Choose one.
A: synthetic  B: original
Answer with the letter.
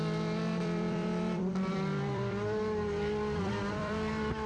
A